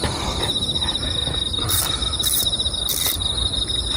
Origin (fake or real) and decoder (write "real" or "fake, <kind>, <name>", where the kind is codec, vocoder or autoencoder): fake, vocoder, BigVGAN v2